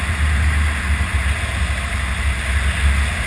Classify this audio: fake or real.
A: real